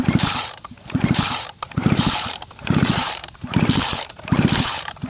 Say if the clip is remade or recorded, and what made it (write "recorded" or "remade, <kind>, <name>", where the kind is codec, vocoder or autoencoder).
remade, vocoder, BigVGAN v2